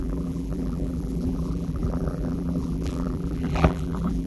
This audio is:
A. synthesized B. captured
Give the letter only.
A